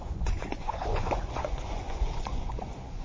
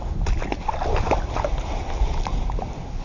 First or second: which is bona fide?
second